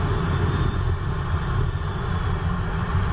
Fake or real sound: real